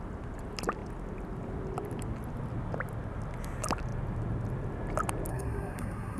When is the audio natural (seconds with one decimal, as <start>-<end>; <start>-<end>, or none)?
0.0-5.3